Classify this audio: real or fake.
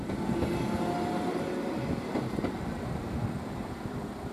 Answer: real